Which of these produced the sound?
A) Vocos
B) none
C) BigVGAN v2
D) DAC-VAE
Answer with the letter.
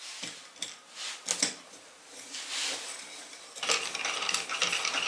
B